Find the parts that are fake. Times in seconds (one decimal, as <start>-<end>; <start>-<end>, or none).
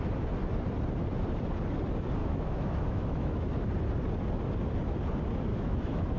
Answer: 2.2-3.7; 5.5-6.2